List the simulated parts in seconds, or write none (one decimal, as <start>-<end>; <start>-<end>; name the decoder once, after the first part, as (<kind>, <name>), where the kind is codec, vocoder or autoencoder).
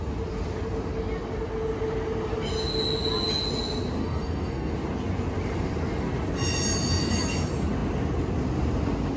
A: 4.0-4.7 (codec, SNAC)